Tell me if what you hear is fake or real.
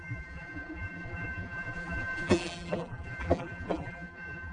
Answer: fake